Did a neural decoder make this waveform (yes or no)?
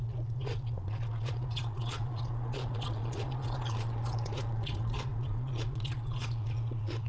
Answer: yes